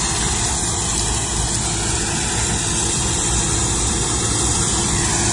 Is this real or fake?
real